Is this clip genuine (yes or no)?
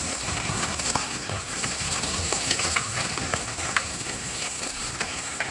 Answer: no